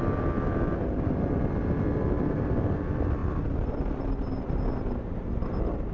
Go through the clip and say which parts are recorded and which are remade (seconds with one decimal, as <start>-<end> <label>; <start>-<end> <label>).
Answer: 0.0-5.9 recorded